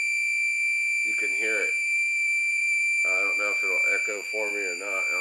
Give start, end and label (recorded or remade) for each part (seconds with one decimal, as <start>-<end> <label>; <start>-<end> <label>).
0.0-1.6 recorded; 1.6-4.5 remade; 4.5-5.2 recorded